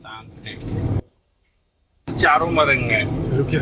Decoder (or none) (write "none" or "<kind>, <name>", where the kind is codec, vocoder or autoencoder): codec, DAC